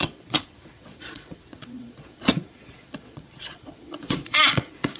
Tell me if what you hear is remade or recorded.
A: remade